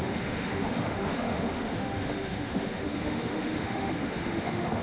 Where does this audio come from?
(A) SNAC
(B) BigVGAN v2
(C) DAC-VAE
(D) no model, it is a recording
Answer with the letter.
C